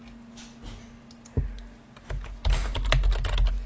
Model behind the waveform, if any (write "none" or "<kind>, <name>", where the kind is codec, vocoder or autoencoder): none